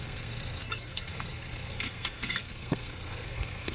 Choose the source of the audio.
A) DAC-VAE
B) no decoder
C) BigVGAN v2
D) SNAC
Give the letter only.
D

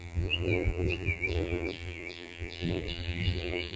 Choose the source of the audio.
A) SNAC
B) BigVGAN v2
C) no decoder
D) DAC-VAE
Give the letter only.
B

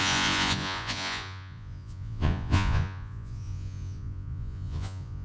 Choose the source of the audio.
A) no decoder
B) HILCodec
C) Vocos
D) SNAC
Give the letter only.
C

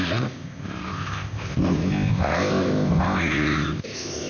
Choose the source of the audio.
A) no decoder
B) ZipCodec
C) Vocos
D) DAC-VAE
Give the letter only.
B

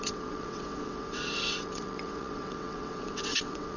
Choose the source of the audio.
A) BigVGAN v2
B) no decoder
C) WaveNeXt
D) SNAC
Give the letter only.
C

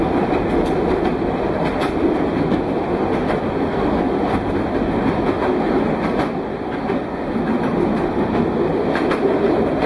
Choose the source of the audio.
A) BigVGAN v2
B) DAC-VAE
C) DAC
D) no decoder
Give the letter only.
D